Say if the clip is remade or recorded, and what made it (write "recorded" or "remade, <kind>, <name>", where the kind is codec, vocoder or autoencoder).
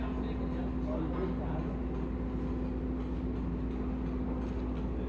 recorded